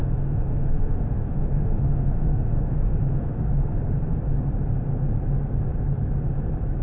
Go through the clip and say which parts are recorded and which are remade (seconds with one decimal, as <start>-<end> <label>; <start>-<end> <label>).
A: 0.0-3.6 remade; 3.6-6.8 recorded